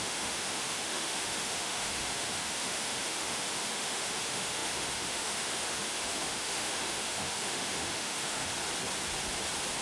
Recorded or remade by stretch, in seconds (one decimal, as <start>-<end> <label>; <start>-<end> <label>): 0.0-8.5 remade; 8.5-9.8 recorded